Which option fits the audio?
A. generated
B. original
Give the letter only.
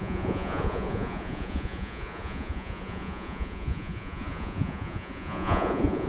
A